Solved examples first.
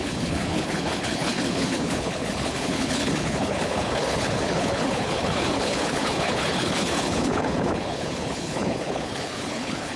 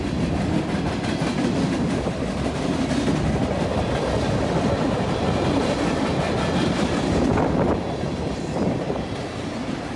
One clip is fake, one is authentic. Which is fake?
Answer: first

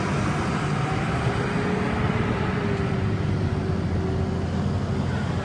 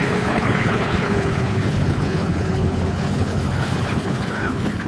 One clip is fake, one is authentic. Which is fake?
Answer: second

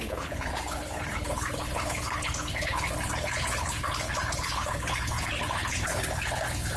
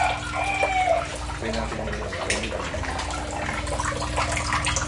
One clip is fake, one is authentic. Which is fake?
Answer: first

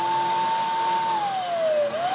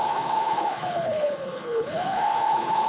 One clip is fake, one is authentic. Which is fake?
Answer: second